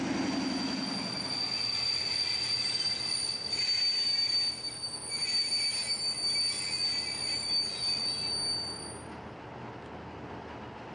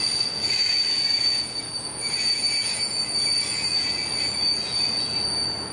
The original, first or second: first